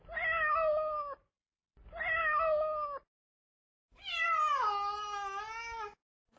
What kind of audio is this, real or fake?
real